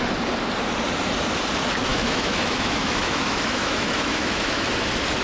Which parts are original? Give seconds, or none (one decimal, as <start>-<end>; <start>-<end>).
0.0-1.9; 4.7-5.2